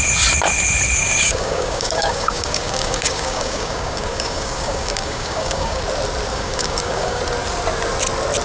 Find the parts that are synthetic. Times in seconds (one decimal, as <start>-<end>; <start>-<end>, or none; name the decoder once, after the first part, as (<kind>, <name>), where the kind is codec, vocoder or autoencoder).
1.0-5.8 (codec, DAC); 6.3-7.2